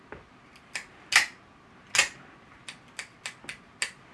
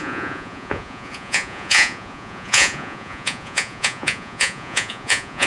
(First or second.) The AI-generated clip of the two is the second